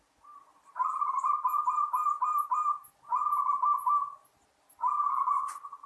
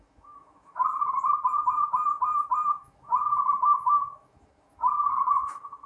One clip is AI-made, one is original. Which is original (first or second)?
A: first